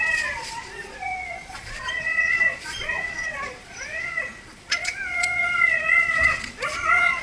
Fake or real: fake